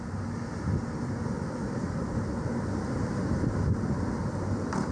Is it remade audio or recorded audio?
recorded